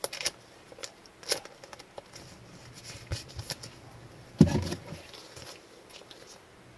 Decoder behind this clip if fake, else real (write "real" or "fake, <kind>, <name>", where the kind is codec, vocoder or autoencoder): real